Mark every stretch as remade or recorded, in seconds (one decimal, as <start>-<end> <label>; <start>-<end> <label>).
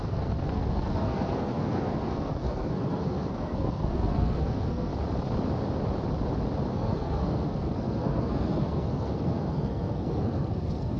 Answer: 0.0-4.9 remade; 4.9-6.7 recorded; 6.7-11.0 remade